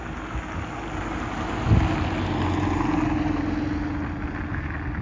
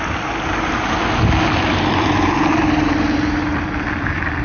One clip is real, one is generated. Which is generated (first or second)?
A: second